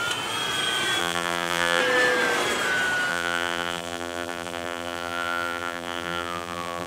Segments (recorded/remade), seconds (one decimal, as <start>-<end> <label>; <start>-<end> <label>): 0.0-1.0 recorded; 1.0-1.8 remade; 1.8-3.1 recorded; 3.1-6.9 remade